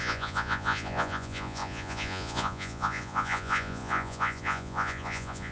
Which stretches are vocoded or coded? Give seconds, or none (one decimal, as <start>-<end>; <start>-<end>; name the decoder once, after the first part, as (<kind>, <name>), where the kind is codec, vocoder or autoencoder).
0.0-5.5 (vocoder, Vocos)